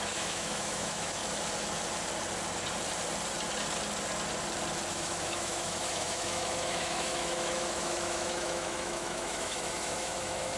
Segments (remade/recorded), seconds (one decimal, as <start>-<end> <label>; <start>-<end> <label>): 0.0-1.2 remade; 1.2-4.9 recorded; 4.9-10.6 remade